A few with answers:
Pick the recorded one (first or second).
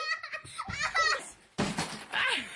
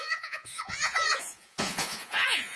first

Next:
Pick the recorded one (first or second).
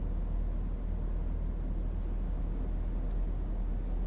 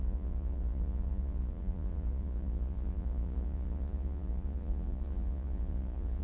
first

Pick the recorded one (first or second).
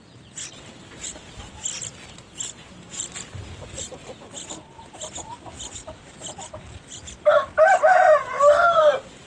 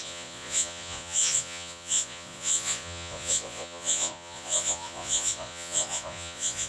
first